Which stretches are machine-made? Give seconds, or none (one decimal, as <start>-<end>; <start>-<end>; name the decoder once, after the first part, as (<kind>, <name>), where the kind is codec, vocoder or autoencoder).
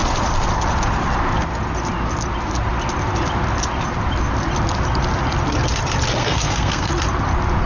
6.2-6.9 (codec, SNAC)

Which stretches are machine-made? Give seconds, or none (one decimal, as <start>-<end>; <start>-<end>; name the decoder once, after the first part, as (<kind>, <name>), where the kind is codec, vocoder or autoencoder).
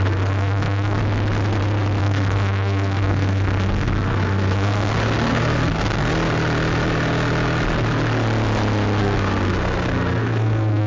0.0-1.0 (codec, SNAC); 2.0-6.0; 9.0-10.9